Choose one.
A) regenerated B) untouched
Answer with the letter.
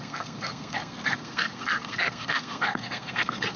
A